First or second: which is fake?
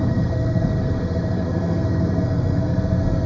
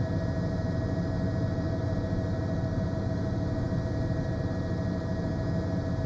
first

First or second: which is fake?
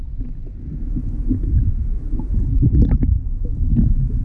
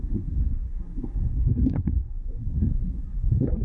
second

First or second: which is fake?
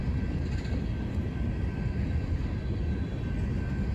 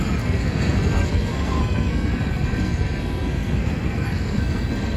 second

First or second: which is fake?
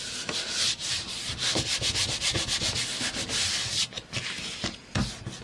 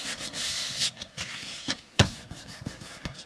second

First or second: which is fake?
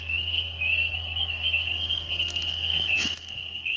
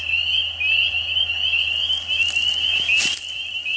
first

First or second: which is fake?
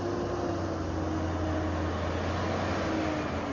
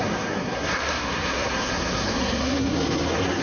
second